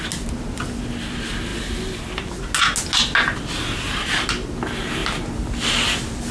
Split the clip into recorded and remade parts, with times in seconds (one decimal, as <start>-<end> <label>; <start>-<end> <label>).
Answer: 0.0-6.3 recorded